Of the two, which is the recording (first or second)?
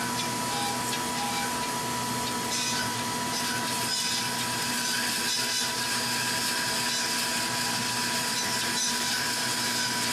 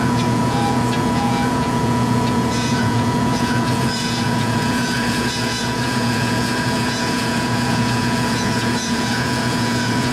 first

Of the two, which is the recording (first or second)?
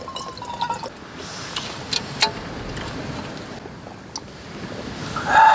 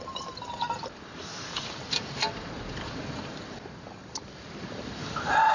first